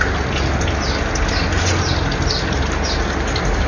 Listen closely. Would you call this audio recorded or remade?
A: recorded